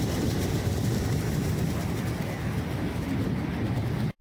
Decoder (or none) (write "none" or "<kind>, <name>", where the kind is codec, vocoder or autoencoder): none